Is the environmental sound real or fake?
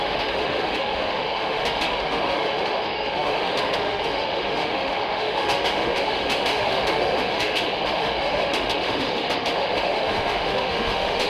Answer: fake